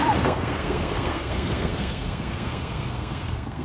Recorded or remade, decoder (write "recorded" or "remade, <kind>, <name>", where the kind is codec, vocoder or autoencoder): remade, codec, SNAC